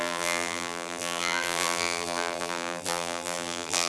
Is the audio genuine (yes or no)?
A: no